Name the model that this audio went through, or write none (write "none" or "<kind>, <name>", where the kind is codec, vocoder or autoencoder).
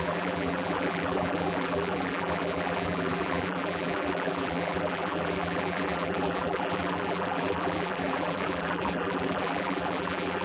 vocoder, BigVGAN v2